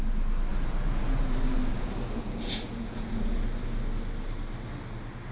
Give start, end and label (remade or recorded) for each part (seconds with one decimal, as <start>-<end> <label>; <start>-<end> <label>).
0.0-0.5 recorded; 0.5-1.2 remade; 1.2-1.7 recorded; 1.7-3.4 remade; 3.4-5.3 recorded